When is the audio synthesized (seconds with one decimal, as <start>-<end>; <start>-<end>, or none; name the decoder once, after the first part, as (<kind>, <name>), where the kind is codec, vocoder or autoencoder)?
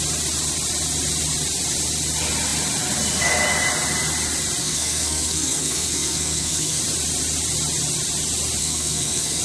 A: 4.6-6.8 (codec, SNAC); 8.6-9.4